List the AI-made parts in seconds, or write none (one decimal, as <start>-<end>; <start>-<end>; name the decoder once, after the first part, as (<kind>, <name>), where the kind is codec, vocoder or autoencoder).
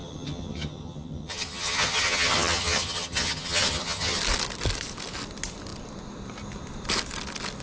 0.0-4.2 (vocoder, HiFi-GAN)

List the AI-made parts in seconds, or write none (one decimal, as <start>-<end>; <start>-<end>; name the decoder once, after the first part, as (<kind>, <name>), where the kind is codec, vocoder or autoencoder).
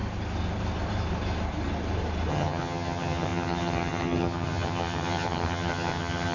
2.3-6.3 (vocoder, HiFi-GAN)